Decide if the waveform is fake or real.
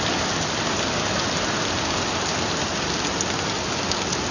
real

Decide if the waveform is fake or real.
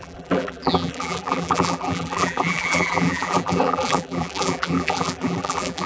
fake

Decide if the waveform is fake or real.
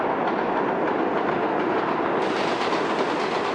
real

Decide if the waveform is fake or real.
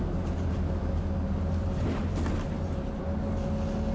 real